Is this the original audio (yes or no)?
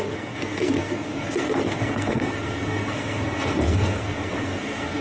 no